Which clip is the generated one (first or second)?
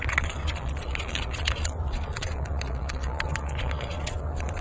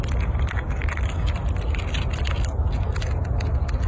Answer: first